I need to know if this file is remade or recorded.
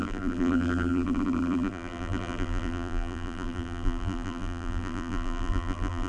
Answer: remade